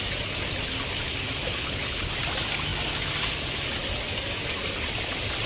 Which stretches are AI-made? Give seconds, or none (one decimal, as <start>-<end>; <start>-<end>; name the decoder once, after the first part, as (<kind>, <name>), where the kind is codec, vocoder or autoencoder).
1.6-2.1 (codec, HILCodec)